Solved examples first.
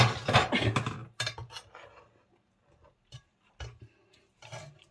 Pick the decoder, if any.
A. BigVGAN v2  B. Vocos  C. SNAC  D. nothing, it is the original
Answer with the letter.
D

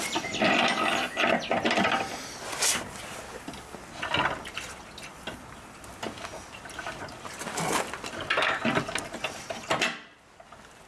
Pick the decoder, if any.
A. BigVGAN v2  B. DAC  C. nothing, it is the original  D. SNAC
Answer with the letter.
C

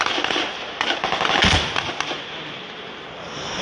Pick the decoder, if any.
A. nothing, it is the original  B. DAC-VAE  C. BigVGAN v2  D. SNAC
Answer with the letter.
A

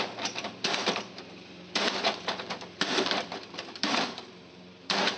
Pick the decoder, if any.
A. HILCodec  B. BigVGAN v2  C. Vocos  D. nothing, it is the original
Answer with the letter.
B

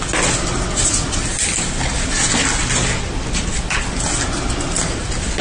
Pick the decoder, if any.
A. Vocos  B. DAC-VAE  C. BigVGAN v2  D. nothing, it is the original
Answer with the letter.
D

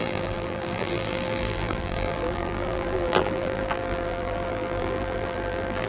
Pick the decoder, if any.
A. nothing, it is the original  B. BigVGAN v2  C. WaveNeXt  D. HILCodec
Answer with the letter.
B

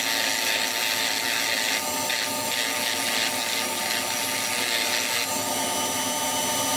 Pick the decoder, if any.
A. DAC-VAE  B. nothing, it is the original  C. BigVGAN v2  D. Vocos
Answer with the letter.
B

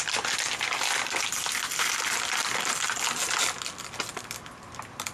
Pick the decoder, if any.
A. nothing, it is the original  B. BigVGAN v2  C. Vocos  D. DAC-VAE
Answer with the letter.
A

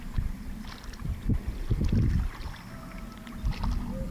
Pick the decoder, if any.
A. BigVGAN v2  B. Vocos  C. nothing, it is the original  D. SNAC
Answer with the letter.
C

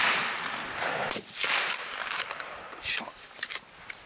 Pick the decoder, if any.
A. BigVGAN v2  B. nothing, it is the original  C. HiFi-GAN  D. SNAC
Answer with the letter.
A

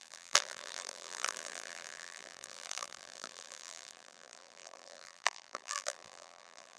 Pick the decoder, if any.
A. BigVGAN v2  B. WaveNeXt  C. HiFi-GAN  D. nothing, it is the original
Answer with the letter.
A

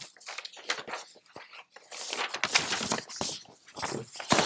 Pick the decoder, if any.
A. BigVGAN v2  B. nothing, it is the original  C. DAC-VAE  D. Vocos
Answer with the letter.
B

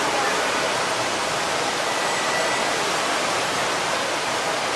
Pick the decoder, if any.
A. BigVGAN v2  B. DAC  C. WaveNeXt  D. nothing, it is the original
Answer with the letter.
D